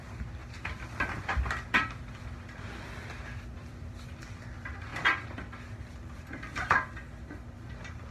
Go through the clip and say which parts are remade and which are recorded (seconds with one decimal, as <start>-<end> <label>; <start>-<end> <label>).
0.0-8.1 remade